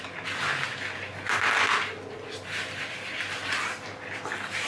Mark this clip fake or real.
real